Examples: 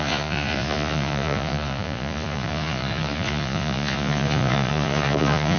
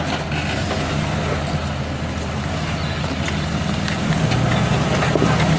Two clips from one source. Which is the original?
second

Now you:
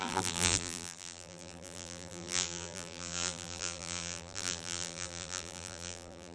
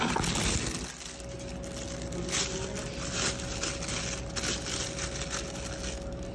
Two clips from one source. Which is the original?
second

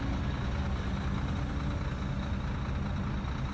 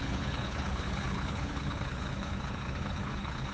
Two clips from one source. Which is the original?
first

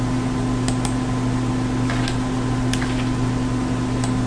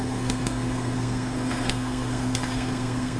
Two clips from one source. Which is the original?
first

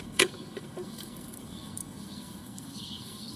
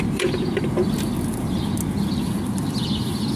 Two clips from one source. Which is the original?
second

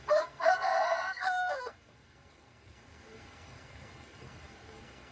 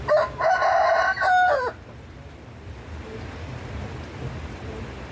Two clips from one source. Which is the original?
second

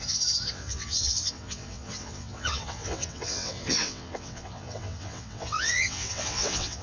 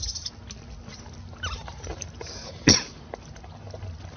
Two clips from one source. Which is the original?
second